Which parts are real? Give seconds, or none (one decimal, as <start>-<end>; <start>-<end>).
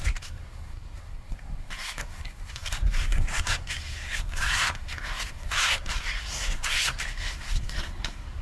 none